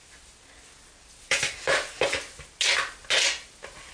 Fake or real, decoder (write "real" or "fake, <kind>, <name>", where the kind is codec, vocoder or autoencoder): real